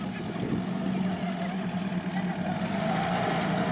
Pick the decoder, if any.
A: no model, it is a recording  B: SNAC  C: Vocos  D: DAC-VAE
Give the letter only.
A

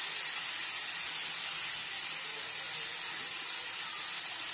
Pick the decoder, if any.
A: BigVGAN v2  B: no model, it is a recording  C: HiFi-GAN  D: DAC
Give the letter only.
B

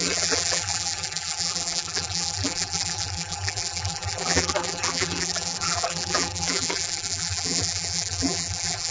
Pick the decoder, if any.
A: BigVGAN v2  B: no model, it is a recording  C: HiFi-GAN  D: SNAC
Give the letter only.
A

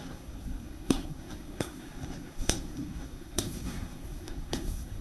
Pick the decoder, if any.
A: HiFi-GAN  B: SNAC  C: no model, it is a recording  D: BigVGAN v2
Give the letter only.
B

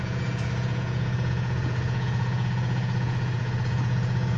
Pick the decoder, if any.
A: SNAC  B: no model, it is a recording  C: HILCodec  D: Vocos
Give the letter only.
D